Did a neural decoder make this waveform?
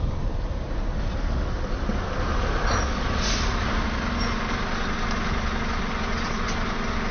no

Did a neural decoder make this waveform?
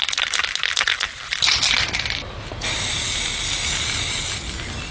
no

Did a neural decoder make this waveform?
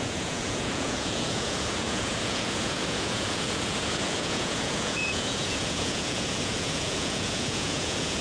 yes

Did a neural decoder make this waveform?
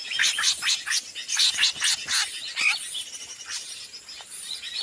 no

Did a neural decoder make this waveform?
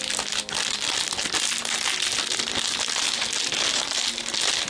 no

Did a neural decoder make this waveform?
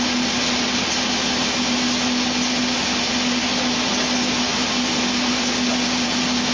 no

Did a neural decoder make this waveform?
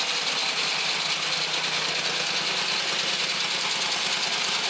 no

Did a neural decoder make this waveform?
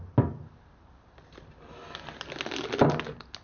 no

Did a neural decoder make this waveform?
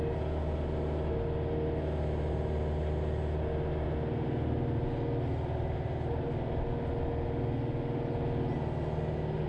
no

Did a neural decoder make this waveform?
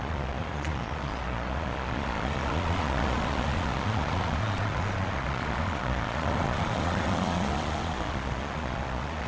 yes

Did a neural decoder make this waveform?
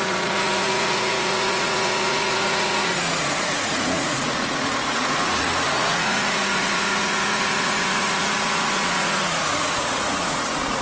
yes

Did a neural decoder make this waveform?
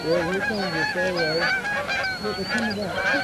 no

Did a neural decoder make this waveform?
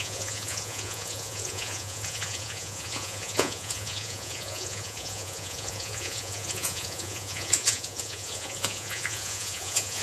yes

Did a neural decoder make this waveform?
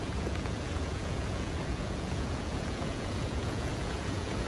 yes